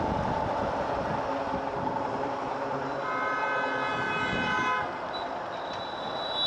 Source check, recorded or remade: recorded